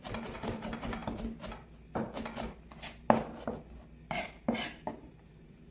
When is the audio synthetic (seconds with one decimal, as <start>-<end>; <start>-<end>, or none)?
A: 0.0-1.0; 4.1-5.7